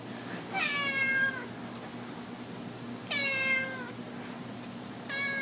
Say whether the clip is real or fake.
real